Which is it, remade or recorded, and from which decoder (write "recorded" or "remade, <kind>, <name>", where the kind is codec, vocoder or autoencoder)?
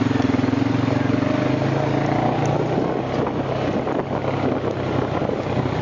recorded